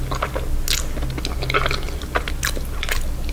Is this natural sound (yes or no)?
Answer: yes